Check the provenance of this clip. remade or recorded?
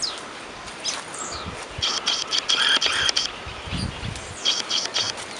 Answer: recorded